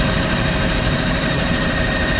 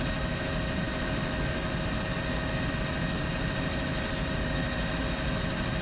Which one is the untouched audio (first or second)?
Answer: second